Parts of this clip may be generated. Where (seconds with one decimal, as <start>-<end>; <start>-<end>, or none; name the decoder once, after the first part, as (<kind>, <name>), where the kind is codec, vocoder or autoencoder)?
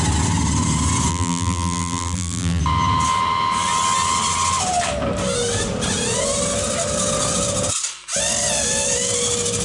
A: 1.1-2.6 (vocoder, BigVGAN v2)